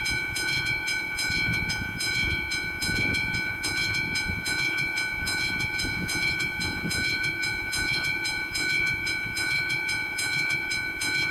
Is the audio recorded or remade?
remade